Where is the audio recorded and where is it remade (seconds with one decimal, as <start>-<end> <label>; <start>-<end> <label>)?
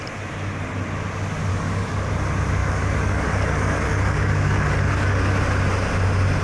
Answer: 0.0-1.5 recorded; 1.5-2.1 remade; 2.1-2.6 recorded; 2.6-5.4 remade; 5.4-6.4 recorded